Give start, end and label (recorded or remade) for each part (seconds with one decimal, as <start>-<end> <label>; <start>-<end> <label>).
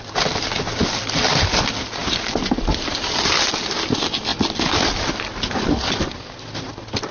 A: 0.0-7.1 recorded